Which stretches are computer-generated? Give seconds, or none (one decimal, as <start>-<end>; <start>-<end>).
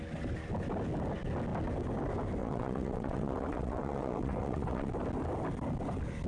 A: 2.4-4.9